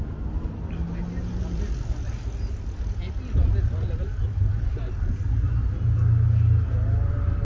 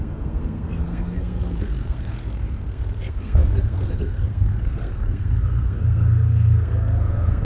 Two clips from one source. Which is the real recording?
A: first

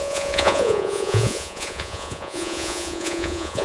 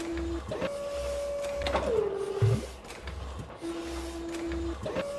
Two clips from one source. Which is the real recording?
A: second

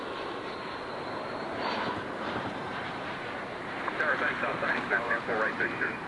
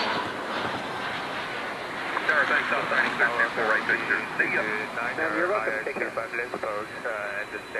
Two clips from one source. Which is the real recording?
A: second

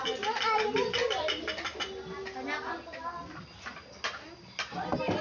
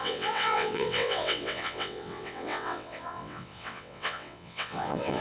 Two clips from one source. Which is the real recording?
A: first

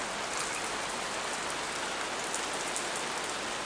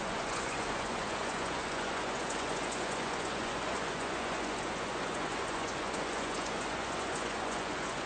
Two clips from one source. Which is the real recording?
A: first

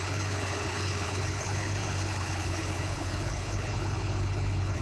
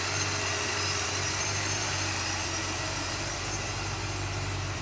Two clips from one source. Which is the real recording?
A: second